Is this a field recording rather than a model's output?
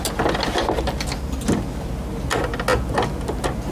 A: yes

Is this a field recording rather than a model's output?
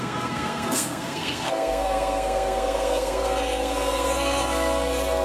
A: no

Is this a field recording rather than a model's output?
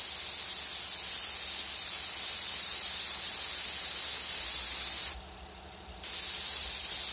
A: yes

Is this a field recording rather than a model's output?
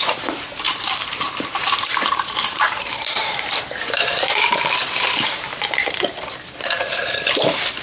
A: no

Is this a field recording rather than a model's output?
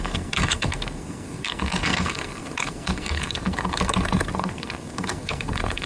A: no